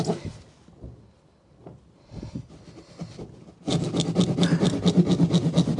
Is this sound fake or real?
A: real